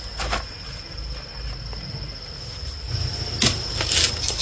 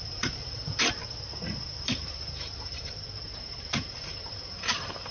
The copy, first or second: second